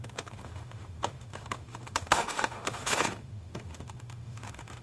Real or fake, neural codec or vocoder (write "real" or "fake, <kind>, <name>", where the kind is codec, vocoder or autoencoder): fake, autoencoder, DAC-VAE